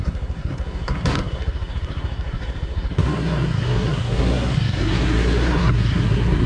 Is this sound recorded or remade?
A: remade